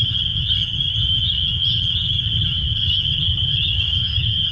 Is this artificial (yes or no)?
yes